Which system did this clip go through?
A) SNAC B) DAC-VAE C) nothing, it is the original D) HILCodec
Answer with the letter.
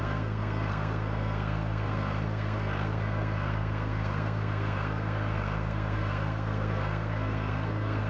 A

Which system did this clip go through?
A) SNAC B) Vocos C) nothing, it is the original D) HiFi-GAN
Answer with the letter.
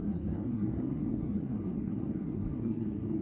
A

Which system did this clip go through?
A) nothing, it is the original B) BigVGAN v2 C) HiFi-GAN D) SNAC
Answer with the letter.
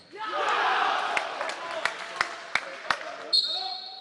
A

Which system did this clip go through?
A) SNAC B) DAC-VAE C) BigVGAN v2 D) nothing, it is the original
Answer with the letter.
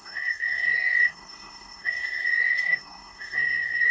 A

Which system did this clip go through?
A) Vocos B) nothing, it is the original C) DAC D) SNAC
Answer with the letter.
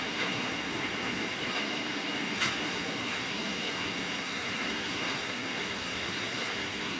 D